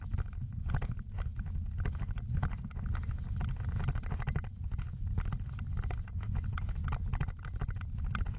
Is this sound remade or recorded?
recorded